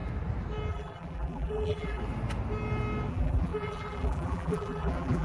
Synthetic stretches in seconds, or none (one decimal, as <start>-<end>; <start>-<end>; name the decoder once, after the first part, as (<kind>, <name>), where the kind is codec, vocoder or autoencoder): 0.7-2.0 (vocoder, BigVGAN v2); 3.1-5.2